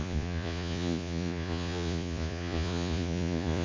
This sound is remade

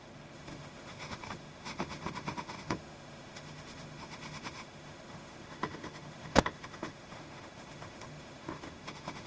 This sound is remade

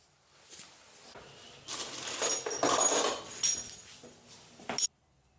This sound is recorded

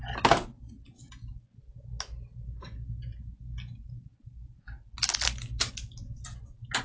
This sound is recorded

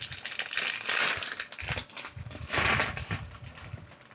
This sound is recorded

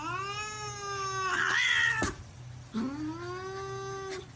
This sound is recorded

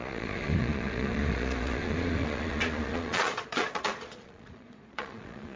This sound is remade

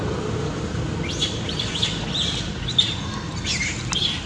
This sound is recorded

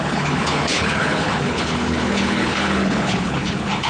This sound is remade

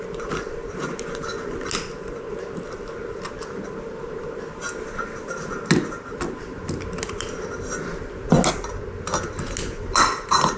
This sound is recorded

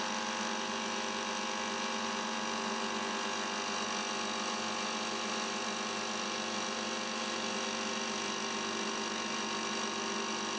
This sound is recorded